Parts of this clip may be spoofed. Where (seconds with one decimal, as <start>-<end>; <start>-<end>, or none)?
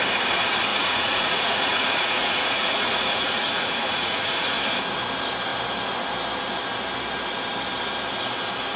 0.7-4.6